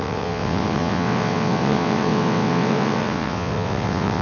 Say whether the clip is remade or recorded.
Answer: remade